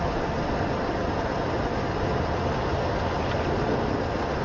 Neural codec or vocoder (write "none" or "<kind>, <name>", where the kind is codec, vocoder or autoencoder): none